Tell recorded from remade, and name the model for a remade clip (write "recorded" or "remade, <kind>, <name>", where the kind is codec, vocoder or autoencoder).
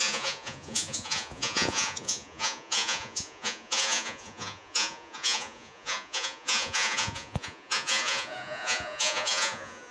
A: remade, vocoder, Vocos